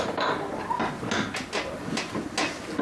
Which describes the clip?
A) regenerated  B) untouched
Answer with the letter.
B